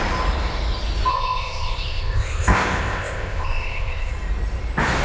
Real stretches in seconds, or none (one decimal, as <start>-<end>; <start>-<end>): 0.0-1.1; 4.1-5.0